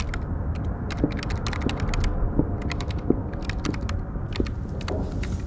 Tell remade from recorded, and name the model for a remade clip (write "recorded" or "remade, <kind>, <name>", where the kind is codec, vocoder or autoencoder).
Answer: recorded